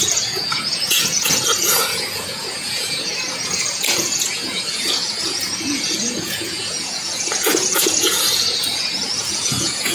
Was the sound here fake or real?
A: fake